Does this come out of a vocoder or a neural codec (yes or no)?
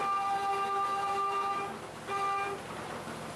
no